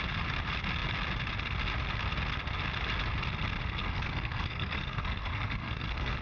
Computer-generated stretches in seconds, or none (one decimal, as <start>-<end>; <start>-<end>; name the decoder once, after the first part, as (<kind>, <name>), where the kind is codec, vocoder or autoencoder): 3.8-6.2 (codec, SNAC)